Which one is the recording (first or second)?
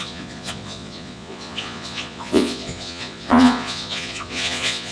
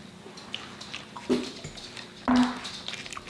second